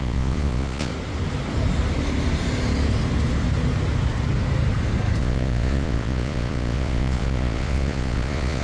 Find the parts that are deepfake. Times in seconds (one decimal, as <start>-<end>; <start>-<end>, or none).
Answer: 0.0-0.9; 5.2-8.6